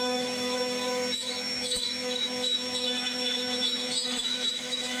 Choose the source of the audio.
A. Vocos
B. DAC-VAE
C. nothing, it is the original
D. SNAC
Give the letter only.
B